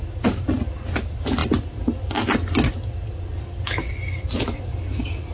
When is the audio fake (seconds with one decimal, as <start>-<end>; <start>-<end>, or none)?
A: none